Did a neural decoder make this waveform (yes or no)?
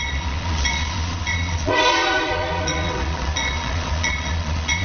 yes